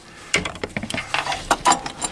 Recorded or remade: remade